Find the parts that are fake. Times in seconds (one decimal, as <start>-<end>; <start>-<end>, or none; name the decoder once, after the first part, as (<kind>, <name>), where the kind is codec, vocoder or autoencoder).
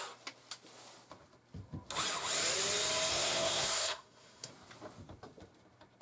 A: 3.1-4.5 (codec, SNAC)